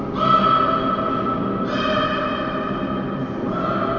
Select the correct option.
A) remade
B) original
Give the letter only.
B